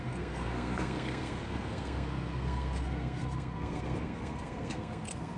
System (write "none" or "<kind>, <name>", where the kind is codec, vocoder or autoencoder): codec, SNAC